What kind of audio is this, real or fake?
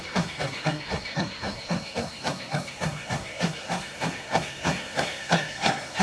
fake